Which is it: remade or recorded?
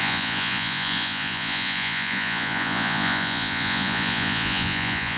remade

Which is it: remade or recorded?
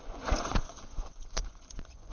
remade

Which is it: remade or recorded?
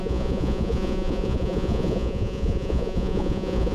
remade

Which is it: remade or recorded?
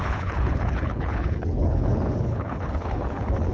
remade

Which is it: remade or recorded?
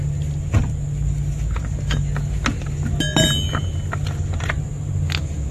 recorded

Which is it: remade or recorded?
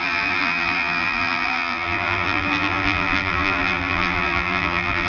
remade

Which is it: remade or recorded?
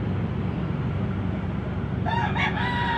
recorded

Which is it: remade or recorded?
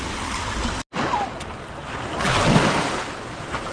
recorded